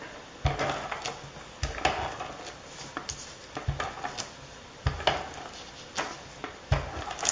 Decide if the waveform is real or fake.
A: real